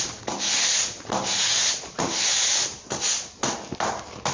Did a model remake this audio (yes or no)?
no